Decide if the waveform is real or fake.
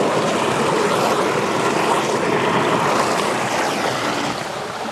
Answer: real